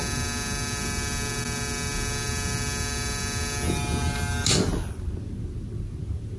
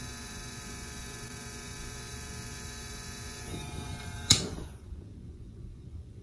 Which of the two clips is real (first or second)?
first